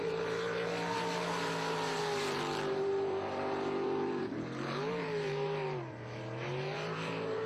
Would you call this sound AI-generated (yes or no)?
yes